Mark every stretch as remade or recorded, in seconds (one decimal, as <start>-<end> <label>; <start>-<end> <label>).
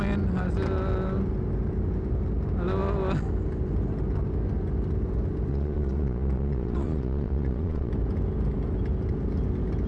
0.0-5.5 recorded; 5.5-7.9 remade; 7.9-9.9 recorded